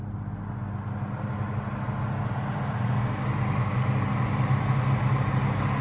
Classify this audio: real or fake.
real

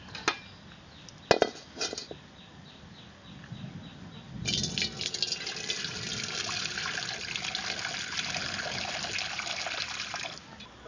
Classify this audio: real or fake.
real